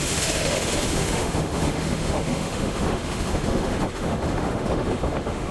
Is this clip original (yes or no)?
no